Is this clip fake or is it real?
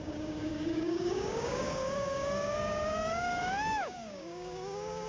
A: fake